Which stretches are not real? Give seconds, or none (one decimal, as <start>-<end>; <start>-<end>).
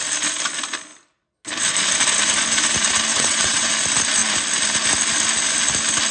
3.1-3.7